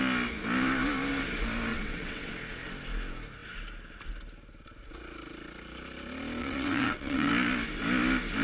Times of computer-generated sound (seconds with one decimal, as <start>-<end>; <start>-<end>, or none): 1.7-2.3; 6.4-7.3